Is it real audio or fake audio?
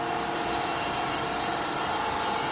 real